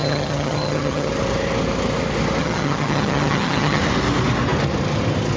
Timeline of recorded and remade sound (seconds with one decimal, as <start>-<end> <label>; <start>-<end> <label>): 0.0-1.1 remade; 1.1-2.4 recorded; 2.4-3.8 remade; 3.8-5.4 recorded